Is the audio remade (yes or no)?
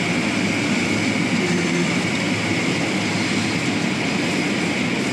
no